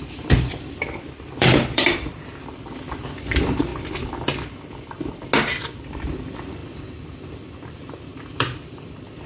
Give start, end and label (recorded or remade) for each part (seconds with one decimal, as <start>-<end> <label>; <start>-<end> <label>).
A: 0.0-3.7 remade; 3.7-5.6 recorded; 5.6-9.3 remade